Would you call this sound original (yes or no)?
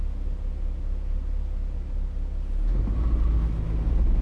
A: yes